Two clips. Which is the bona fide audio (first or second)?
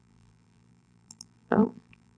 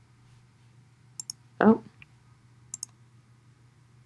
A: second